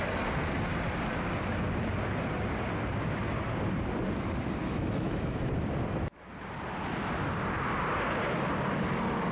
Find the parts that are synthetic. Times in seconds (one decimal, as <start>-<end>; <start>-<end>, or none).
4.6-5.5